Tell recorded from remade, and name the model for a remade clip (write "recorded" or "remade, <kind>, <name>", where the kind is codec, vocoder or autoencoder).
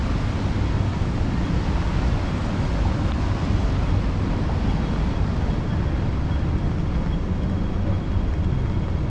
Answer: recorded